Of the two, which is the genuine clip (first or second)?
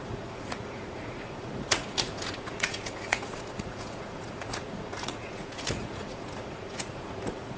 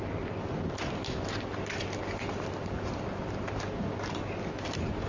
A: second